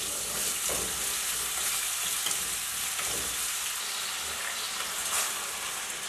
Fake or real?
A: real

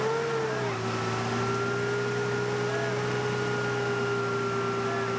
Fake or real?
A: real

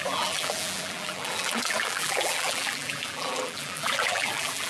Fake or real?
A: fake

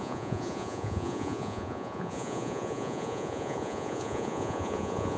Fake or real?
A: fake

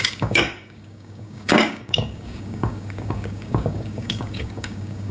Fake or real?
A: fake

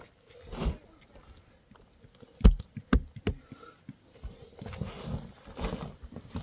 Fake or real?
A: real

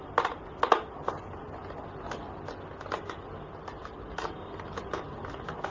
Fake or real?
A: real